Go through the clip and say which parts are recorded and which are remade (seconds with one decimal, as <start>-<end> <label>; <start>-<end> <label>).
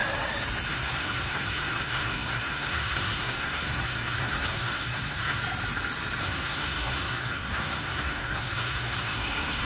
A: 0.0-0.7 recorded; 0.7-5.4 remade; 5.4-6.2 recorded; 6.2-9.6 remade